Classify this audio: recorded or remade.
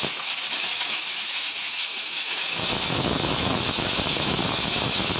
remade